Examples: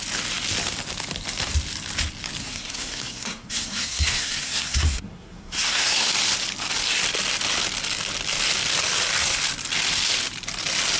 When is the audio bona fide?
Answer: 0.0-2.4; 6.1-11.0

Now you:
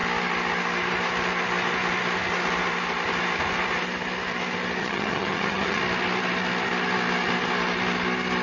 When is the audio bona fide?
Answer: 0.0-4.8; 5.8-8.4

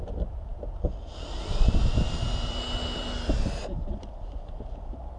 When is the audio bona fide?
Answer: 0.0-5.2

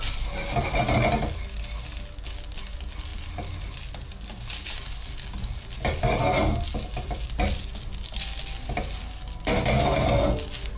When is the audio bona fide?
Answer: 0.0-10.8